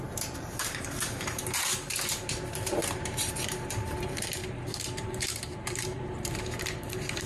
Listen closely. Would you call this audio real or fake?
fake